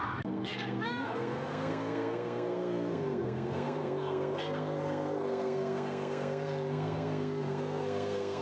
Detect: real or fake fake